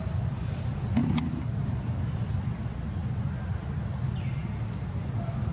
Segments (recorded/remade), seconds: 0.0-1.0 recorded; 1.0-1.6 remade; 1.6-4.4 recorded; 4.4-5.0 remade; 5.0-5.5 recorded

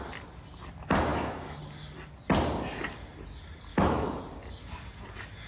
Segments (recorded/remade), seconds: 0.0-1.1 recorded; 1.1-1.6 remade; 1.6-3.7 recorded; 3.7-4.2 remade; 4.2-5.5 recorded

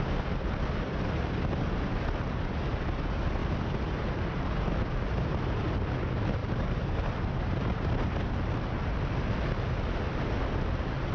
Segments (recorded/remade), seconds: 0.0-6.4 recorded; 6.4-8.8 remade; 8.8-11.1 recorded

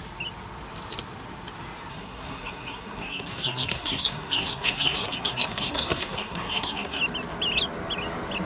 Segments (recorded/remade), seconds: 0.0-1.9 recorded; 1.9-7.0 remade; 7.0-8.5 recorded

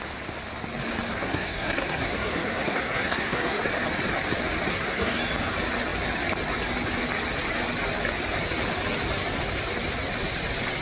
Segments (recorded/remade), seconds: 0.0-1.1 recorded; 1.1-3.6 remade; 3.6-4.7 recorded; 4.7-5.2 remade; 5.2-10.8 recorded

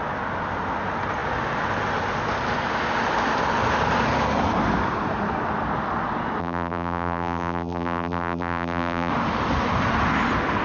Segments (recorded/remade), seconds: 0.0-6.4 recorded; 6.4-9.1 remade; 9.1-10.6 recorded

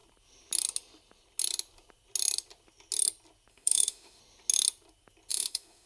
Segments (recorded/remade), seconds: 0.0-3.5 recorded; 3.5-4.2 remade; 4.2-5.3 recorded; 5.3-5.9 remade

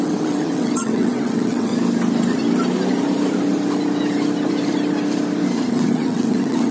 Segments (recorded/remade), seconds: 0.0-1.7 remade; 1.7-5.7 recorded; 5.7-6.7 remade